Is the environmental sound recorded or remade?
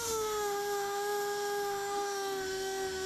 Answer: remade